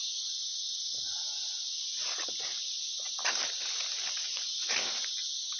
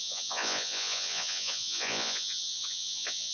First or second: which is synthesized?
second